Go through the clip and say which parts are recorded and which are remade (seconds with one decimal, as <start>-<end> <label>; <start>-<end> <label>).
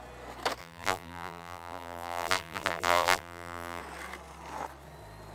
0.0-0.6 recorded; 0.6-3.8 remade; 3.8-5.3 recorded